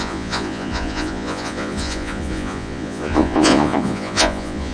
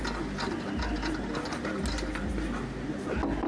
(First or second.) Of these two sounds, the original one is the second